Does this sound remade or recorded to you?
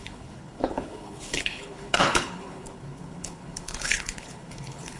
remade